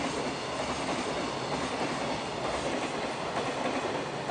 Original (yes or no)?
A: yes